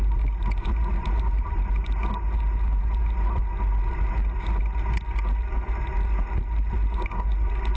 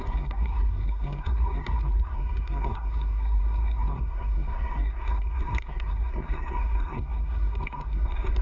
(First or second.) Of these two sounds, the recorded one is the first